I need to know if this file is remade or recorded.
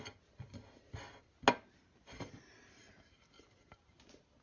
recorded